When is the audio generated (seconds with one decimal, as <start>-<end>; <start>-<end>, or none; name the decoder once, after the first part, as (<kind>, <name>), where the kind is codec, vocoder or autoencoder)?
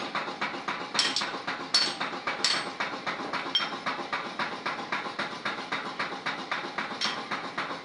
none